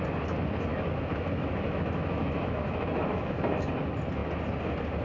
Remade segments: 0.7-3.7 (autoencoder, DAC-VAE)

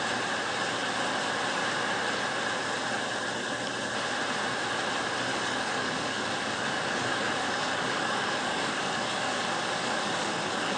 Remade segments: 5.3-10.8 (codec, DAC)

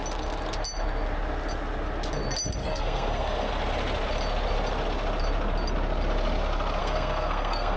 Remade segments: 2.6-3.5 (codec, SNAC); 6.8-7.8

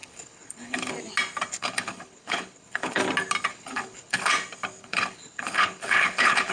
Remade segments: 0.0-0.9 (codec, HILCodec); 1.5-3.0; 3.5-4.3; 4.8-6.5

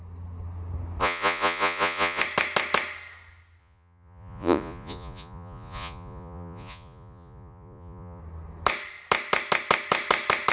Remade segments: 1.0-2.2 (vocoder, Vocos); 3.6-8.2

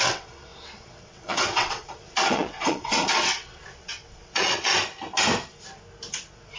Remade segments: 0.0-4.7 (vocoder, WaveNeXt)

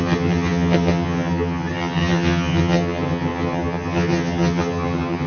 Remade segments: 0.0-5.3 (vocoder, HiFi-GAN)